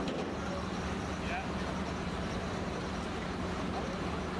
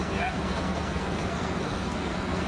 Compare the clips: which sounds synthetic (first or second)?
second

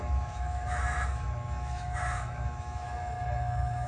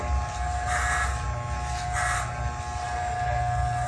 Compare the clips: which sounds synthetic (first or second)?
first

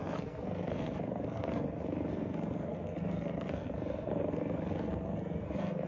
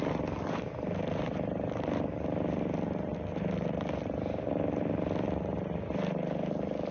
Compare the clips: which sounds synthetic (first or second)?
first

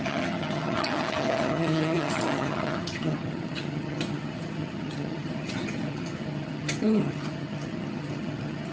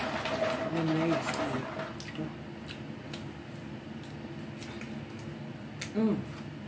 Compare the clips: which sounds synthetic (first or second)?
first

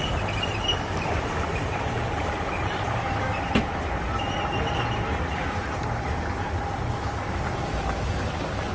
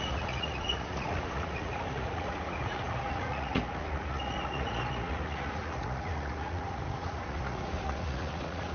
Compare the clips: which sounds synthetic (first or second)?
second